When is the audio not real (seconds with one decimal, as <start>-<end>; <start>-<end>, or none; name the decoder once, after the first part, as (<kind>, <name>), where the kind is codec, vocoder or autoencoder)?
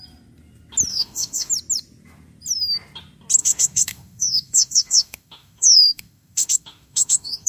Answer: 0.9-1.5 (autoencoder, DAC-VAE); 3.4-7.5